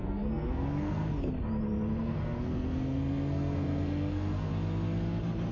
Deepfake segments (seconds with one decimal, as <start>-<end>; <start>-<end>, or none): 0.0-1.1; 2.0-4.5